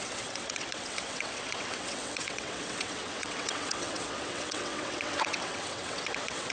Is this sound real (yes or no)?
no